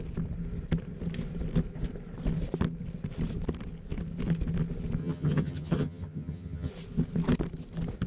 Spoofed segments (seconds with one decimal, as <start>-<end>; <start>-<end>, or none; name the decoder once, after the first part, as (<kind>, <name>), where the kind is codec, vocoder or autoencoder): 5.0-6.7 (vocoder, HiFi-GAN)